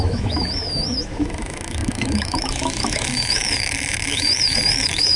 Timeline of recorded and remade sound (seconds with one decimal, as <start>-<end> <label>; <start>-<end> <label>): 0.0-5.2 remade